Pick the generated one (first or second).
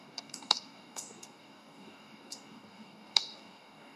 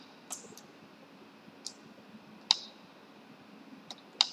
first